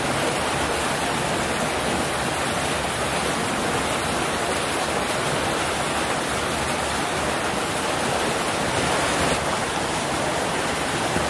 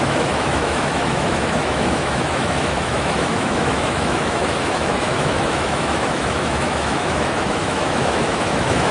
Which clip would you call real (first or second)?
first